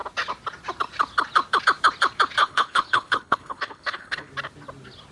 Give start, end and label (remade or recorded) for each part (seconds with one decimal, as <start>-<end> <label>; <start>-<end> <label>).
0.0-2.4 recorded; 2.4-4.3 remade; 4.3-5.1 recorded